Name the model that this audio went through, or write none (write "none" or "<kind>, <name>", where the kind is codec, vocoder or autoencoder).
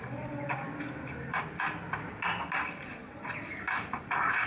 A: none